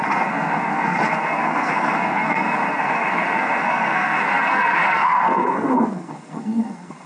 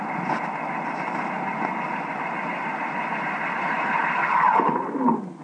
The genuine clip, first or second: second